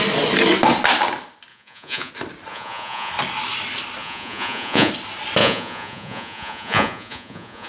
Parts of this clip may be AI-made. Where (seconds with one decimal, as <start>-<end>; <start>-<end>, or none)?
1.5-2.1; 2.5-3.1; 4.0-4.9; 5.4-7.7